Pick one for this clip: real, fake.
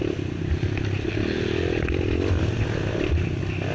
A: real